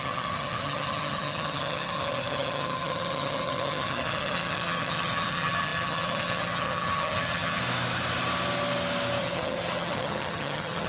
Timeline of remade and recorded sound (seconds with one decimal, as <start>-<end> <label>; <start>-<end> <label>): 0.0-7.6 remade; 7.6-9.2 recorded; 9.2-10.9 remade